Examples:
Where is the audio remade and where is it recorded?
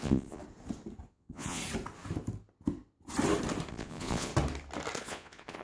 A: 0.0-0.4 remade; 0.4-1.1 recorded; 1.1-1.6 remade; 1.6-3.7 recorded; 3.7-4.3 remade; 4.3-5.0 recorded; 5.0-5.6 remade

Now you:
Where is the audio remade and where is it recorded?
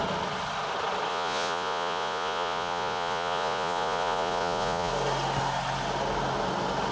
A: 0.0-1.1 recorded; 1.1-4.9 remade; 4.9-6.9 recorded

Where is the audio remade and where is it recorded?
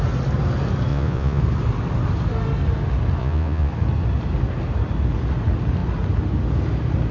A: 0.0-0.9 recorded; 0.9-1.4 remade; 1.4-3.2 recorded; 3.2-3.7 remade; 3.7-7.1 recorded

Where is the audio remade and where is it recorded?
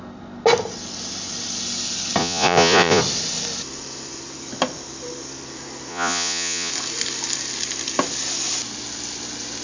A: 0.0-2.2 recorded; 2.2-3.0 remade; 3.0-5.9 recorded; 5.9-6.7 remade; 6.7-9.6 recorded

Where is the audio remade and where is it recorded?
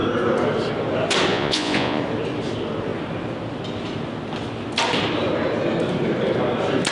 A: 0.0-1.3 recorded; 1.3-2.0 remade; 2.0-6.9 recorded